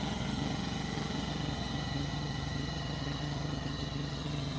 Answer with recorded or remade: remade